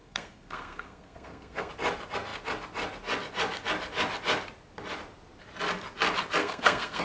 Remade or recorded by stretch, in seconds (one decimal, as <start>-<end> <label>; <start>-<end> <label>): 0.0-1.7 remade; 1.7-6.4 recorded; 6.4-7.0 remade